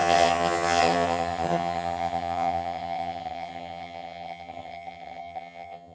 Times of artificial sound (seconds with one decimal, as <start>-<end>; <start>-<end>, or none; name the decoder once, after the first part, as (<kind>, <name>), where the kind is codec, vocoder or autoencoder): 0.0-5.9 (vocoder, HiFi-GAN)